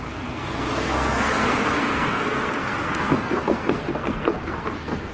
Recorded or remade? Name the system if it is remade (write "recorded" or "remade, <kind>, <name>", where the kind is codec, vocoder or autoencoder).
remade, codec, SNAC